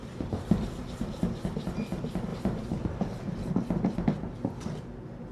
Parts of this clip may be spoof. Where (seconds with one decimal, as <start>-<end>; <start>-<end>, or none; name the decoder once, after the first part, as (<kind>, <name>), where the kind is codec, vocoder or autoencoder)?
0.0-1.2 (vocoder, BigVGAN v2); 2.3-3.5